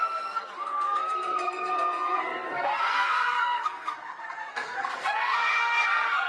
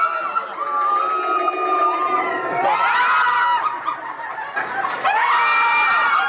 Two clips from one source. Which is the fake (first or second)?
first